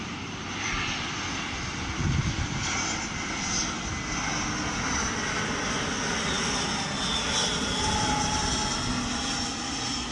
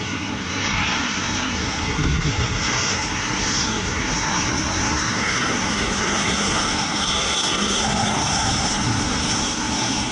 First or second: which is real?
first